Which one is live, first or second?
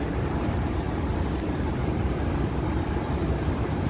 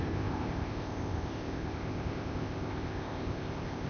first